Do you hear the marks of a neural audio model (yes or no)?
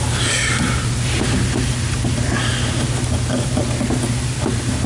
no